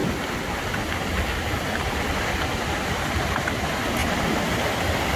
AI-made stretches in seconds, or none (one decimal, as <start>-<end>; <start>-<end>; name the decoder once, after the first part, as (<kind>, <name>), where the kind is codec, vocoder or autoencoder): none